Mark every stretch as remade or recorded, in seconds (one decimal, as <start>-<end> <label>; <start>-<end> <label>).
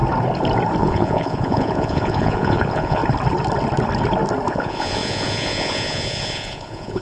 0.0-0.8 recorded; 0.8-3.0 remade; 3.0-4.5 recorded; 4.5-7.0 remade